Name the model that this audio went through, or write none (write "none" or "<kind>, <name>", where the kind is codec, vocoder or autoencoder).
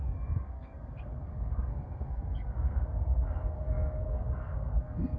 codec, SNAC